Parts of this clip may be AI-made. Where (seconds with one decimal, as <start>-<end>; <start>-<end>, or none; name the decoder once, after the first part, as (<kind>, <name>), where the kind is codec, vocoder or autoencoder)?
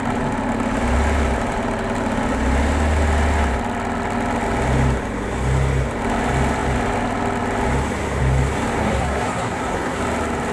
8.8-10.0 (codec, SNAC)